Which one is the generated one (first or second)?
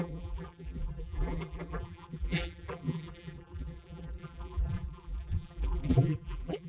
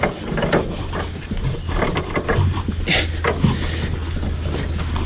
first